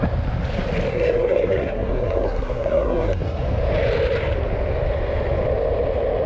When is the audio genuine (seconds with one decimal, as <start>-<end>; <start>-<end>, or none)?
0.0-0.9; 3.4-6.3